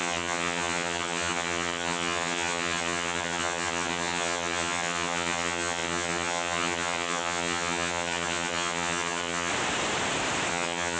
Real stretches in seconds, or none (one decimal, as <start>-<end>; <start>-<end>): 9.5-10.5